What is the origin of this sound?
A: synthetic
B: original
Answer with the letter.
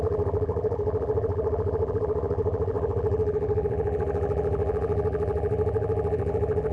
A